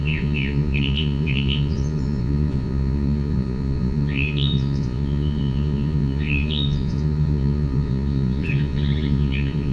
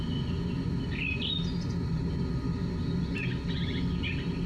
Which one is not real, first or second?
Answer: first